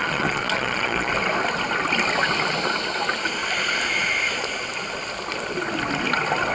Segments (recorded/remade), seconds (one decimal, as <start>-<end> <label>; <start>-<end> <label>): 0.0-1.1 remade; 1.1-6.5 recorded